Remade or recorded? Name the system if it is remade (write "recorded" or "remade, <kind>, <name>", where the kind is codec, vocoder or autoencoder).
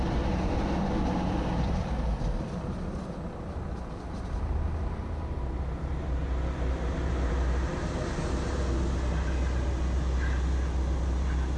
recorded